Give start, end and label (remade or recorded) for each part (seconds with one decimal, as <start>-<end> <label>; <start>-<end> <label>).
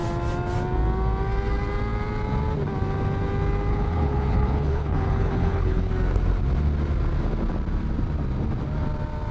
0.0-3.7 recorded; 3.7-5.9 remade; 5.9-9.3 recorded